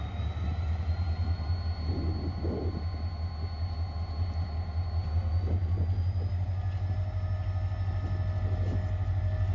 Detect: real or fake real